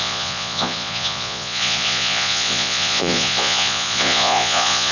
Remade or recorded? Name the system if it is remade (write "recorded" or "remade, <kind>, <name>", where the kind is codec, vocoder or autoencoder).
remade, vocoder, Vocos